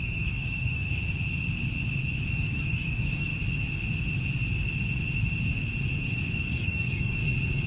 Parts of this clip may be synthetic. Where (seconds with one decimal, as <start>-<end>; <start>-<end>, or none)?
0.0-1.0; 2.3-3.3; 6.0-7.2